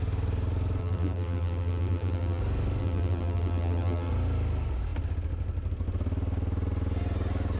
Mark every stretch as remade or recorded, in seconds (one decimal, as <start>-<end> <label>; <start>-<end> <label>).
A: 0.0-0.8 recorded; 0.8-2.4 remade; 2.4-2.8 recorded; 2.8-4.1 remade; 4.1-7.6 recorded